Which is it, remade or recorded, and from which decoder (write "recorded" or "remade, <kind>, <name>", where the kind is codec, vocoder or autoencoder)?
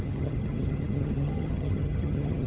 remade, vocoder, HiFi-GAN